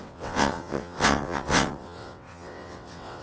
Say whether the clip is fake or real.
fake